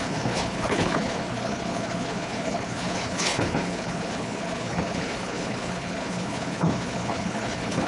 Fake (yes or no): yes